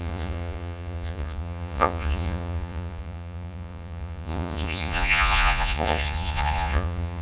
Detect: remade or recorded remade